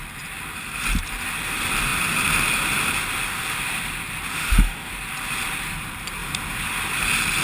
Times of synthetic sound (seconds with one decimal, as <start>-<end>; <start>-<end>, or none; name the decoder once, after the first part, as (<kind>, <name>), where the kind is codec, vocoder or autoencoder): 4.3-4.9 (autoencoder, DAC-VAE)